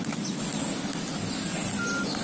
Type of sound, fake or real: real